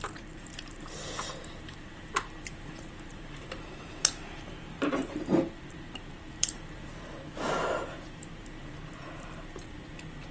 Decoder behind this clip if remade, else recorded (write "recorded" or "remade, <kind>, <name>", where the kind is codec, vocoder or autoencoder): remade, vocoder, BigVGAN v2